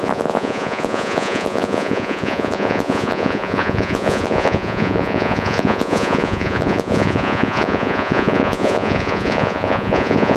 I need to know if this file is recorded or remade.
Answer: remade